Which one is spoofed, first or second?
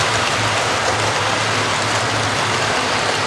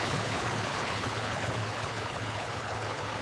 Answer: second